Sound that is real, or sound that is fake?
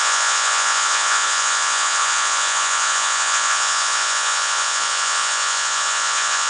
fake